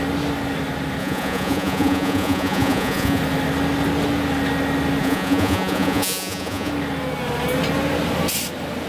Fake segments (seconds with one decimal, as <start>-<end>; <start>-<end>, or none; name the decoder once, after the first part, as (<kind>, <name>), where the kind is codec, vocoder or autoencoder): 1.0-3.2 (vocoder, Vocos); 5.0-6.7